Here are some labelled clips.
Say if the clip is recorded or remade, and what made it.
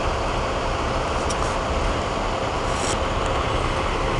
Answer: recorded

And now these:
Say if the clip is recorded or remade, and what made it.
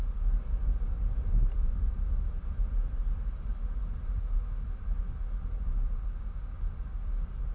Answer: recorded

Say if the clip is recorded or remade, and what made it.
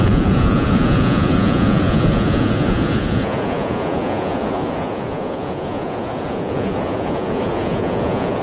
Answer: remade, vocoder, Vocos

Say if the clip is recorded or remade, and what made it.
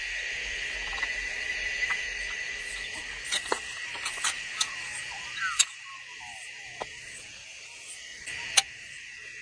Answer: recorded